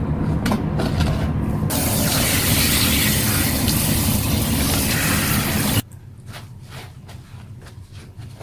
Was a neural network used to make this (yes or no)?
no